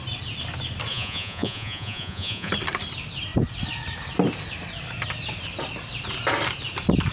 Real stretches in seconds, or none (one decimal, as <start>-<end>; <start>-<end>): 0.0-0.9; 2.5-7.1